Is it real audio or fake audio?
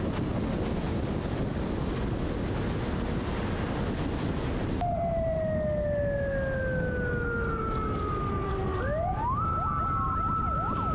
real